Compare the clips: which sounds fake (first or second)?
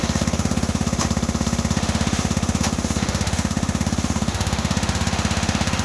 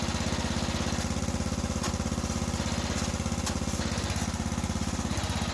first